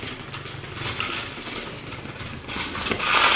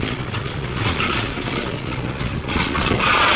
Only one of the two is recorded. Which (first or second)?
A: first